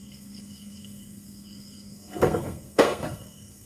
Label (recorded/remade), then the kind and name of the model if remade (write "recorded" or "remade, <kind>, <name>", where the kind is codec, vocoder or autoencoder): remade, codec, SNAC